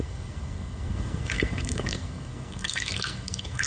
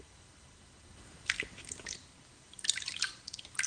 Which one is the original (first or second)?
second